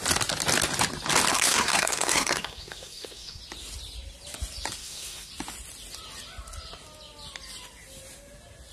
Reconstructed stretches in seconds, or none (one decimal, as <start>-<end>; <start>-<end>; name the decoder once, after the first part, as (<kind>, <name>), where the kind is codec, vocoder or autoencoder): 1.3-3.4 (codec, SNAC); 4.8-5.3